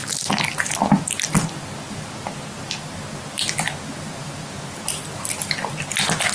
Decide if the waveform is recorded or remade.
recorded